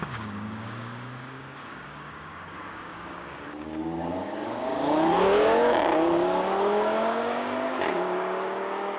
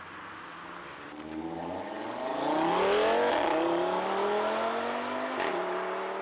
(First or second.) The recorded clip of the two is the second